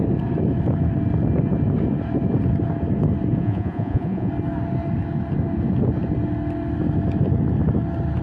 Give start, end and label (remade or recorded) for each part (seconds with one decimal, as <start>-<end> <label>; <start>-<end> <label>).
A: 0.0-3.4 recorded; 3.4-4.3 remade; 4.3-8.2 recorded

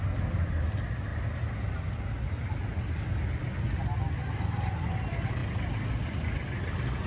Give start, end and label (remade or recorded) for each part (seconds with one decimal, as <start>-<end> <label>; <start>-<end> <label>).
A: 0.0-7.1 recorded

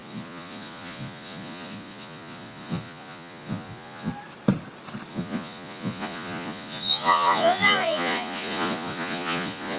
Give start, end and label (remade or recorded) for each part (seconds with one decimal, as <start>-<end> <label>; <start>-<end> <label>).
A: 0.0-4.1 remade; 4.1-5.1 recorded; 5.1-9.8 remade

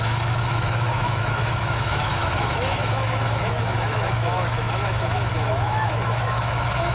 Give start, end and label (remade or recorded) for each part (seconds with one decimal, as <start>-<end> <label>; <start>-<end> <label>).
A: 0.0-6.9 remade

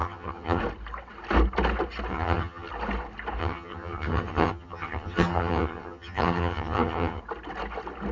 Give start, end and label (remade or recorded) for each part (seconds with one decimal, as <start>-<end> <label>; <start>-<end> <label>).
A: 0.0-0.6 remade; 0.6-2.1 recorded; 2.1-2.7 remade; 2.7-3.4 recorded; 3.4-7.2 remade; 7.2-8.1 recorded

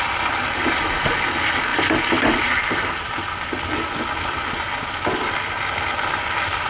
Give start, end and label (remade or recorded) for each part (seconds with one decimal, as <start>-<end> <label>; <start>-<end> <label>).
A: 0.0-6.7 recorded